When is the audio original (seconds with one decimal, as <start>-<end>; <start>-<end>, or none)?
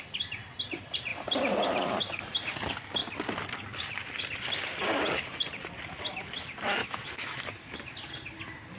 0.0-6.8; 7.4-8.8